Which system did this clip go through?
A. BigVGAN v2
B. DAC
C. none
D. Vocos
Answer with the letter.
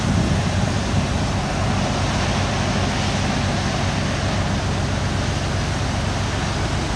C